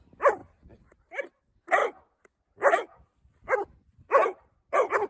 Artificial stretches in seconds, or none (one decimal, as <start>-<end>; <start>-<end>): none